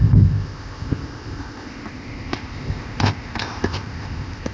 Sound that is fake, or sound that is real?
fake